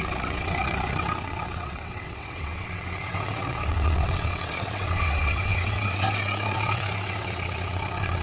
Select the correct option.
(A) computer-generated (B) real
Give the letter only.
A